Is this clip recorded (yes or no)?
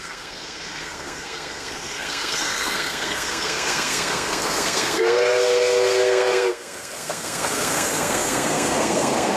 no